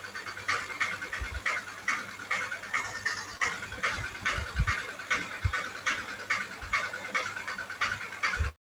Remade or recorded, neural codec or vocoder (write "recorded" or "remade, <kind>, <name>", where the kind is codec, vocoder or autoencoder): remade, vocoder, BigVGAN v2